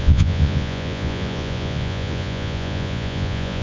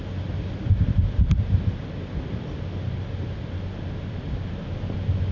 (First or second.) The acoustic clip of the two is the second